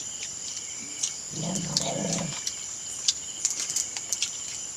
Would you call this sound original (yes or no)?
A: no